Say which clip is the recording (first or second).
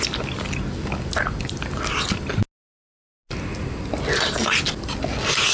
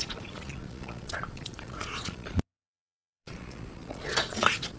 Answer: first